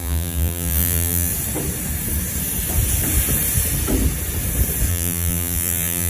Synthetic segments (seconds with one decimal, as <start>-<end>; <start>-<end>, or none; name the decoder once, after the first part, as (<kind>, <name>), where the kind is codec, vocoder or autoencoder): 0.0-1.3 (vocoder, BigVGAN v2); 4.9-6.1